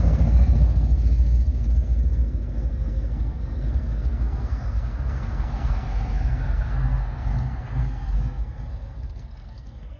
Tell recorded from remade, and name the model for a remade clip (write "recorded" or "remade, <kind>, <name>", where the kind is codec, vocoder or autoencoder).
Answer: remade, codec, SNAC